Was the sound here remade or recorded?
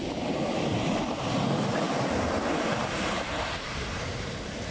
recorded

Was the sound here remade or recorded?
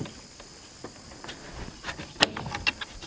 recorded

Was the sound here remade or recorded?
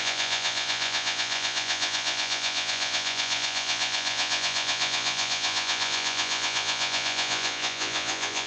remade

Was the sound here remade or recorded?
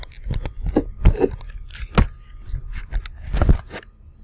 recorded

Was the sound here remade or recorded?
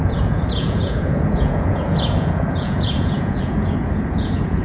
remade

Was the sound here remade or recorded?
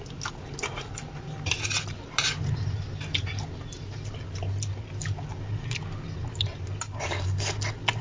recorded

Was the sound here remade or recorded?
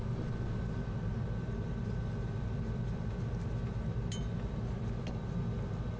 recorded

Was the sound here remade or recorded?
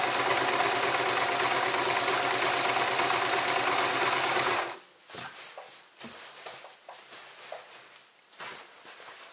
recorded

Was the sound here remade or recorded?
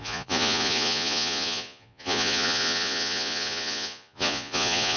remade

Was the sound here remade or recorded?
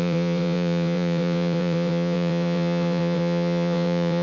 remade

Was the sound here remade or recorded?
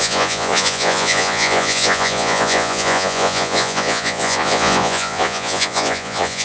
remade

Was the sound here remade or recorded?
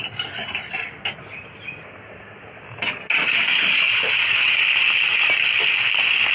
recorded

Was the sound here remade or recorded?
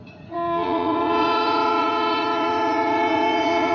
remade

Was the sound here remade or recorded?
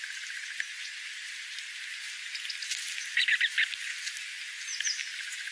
recorded